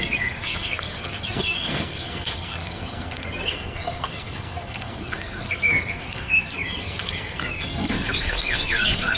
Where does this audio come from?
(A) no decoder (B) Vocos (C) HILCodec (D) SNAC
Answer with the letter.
D